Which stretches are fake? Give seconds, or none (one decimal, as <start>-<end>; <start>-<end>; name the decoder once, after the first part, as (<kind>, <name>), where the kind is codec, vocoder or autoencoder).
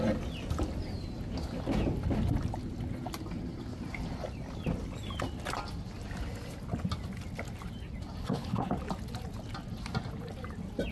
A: 8.2-8.7 (codec, HILCodec)